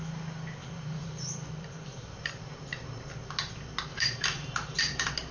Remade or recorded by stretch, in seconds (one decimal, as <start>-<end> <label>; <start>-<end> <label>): 0.0-0.6 recorded; 0.6-2.5 remade; 2.5-3.9 recorded; 3.9-4.8 remade; 4.8-5.3 recorded